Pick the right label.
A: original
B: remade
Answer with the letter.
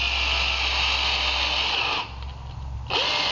A